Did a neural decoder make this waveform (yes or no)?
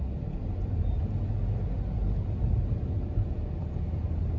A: yes